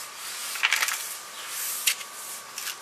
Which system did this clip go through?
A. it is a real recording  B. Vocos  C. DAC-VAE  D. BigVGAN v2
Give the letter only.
A